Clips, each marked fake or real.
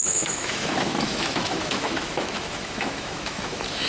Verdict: fake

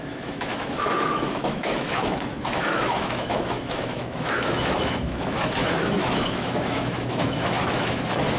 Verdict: fake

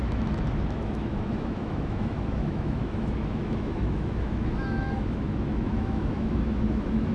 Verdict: fake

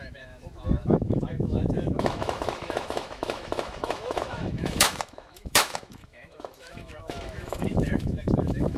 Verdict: fake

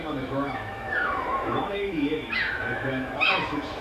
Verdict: fake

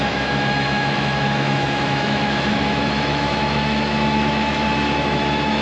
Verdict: fake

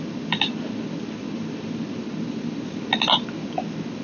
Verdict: real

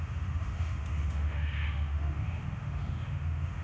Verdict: fake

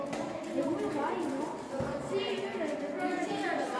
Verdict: real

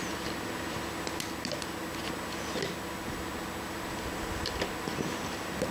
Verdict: real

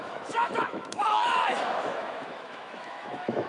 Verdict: fake